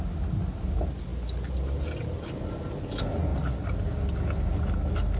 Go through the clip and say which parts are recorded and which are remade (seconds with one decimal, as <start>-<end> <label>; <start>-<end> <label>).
0.0-5.2 recorded